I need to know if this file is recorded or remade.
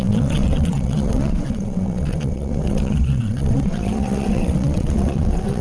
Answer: remade